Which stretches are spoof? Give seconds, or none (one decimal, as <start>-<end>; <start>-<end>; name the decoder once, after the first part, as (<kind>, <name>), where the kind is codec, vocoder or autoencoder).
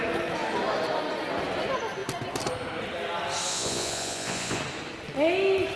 3.5-4.6 (vocoder, Vocos)